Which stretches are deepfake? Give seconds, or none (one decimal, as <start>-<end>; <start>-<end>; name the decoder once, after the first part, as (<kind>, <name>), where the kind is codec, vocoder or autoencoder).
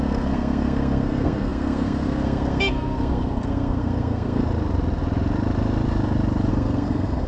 0.0-4.4 (codec, SNAC); 6.5-7.3